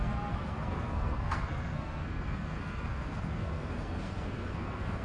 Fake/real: fake